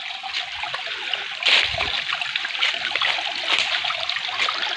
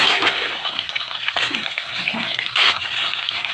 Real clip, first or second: first